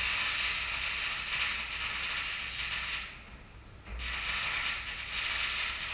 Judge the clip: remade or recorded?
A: recorded